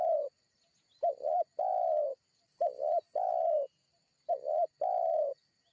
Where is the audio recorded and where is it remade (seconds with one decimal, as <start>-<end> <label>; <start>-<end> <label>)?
0.0-5.7 recorded